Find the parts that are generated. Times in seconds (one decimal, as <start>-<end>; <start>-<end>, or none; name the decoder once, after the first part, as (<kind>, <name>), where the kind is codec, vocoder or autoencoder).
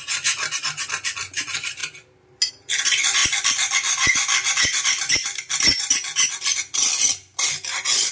none